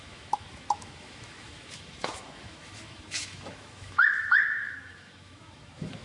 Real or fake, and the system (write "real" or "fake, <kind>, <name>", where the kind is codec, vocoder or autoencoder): fake, autoencoder, DAC-VAE